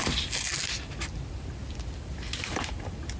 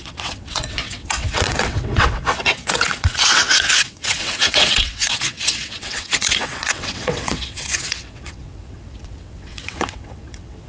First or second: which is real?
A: first